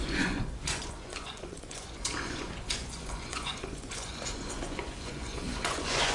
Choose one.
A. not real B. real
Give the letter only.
A